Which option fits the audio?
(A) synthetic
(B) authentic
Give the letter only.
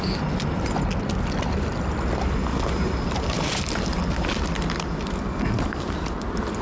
B